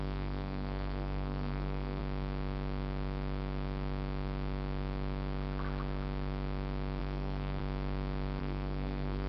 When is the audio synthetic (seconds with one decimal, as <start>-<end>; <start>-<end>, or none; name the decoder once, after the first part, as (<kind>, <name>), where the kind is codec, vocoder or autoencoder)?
0.0-2.0 (codec, SNAC); 7.0-7.6; 8.4-9.3